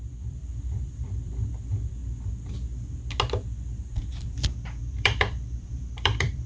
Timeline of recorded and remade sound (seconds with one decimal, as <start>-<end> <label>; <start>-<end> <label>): 0.0-2.0 remade; 2.0-4.8 recorded; 4.8-6.5 remade